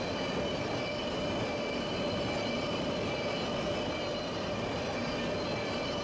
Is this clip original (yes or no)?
yes